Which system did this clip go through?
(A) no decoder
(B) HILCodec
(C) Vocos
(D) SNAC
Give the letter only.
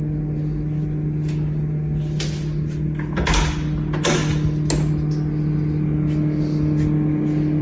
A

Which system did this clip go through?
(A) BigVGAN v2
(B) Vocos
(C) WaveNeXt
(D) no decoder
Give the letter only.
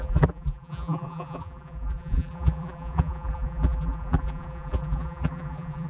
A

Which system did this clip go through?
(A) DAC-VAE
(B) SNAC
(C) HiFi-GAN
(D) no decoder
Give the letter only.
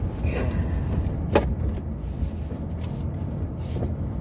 D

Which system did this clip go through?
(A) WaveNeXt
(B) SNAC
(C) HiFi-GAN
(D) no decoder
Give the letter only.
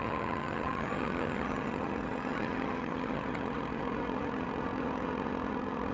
C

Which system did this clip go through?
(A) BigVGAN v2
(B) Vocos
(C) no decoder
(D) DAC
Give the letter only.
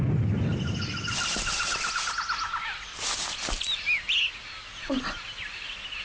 C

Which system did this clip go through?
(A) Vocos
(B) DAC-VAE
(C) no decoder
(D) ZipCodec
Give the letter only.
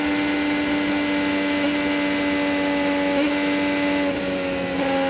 C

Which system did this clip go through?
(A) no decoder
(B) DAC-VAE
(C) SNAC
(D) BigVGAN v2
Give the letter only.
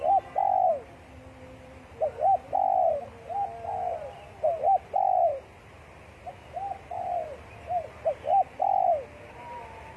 A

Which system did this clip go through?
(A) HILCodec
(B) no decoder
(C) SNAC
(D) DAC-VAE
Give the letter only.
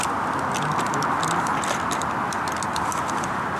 B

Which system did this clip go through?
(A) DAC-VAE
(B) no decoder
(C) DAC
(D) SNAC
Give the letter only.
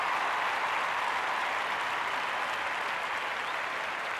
B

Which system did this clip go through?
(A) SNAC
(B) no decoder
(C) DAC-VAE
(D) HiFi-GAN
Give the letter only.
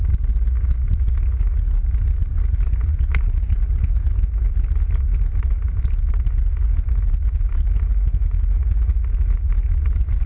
B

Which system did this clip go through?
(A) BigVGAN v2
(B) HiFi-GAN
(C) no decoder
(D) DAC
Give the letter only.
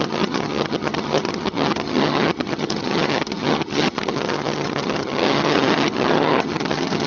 B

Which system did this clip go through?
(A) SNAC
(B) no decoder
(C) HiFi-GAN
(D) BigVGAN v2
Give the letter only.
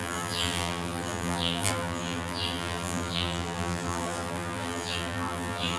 D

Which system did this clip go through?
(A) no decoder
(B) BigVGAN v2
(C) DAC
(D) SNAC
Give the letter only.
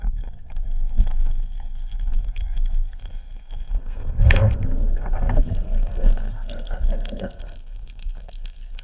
D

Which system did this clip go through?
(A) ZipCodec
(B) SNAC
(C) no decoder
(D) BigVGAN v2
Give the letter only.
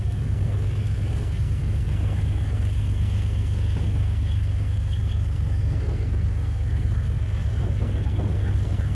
B